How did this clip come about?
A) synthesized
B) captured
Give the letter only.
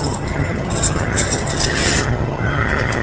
A